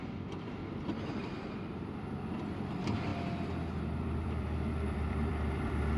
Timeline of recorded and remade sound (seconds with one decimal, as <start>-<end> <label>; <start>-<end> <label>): 0.0-3.1 remade; 3.1-3.8 recorded; 3.8-6.0 remade